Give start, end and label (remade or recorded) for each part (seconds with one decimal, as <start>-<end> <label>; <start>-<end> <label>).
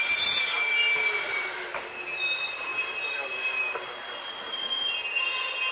0.0-5.7 recorded